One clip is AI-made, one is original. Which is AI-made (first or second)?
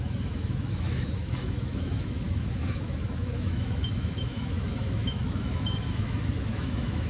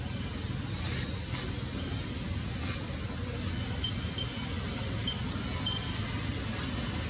first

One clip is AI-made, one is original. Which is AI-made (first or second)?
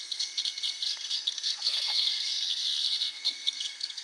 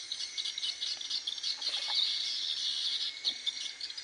first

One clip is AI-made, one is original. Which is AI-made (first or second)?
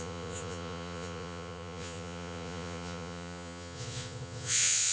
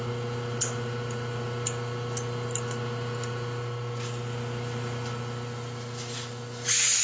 first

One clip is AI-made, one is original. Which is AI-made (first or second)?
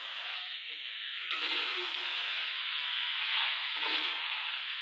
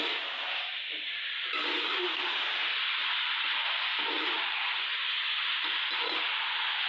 first